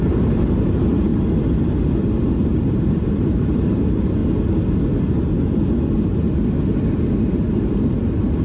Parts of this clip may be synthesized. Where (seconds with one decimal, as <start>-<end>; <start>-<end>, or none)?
0.0-1.1; 2.5-4.2; 7.2-8.4